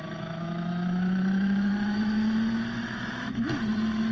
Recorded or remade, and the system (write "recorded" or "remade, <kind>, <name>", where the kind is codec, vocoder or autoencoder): remade, autoencoder, DAC-VAE